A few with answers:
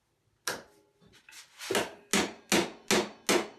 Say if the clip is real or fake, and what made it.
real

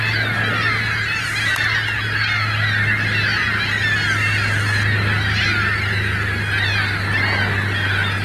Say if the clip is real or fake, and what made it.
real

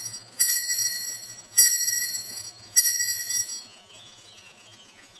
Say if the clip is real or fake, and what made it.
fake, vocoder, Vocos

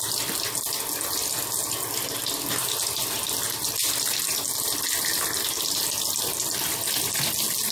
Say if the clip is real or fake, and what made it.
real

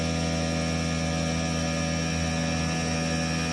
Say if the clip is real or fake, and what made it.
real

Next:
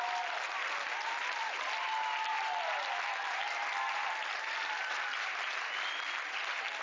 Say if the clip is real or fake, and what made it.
real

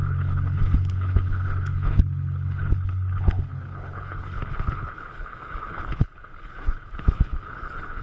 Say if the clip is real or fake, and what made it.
fake, codec, HILCodec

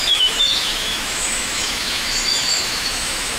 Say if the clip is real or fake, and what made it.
fake, autoencoder, DAC-VAE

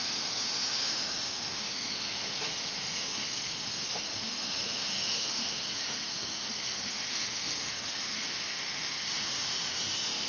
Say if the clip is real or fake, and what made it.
fake, autoencoder, DAC-VAE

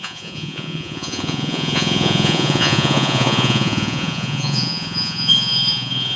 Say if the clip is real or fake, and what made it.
fake, vocoder, Vocos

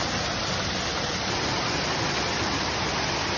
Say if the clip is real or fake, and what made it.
real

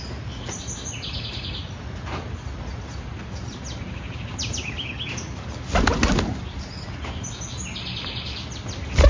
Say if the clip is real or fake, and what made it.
real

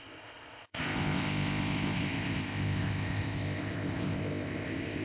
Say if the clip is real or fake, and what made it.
fake, codec, ZipCodec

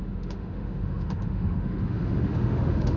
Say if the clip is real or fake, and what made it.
fake, autoencoder, DAC-VAE